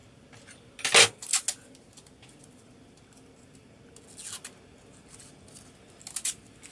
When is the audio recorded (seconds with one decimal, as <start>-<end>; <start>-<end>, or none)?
0.0-6.7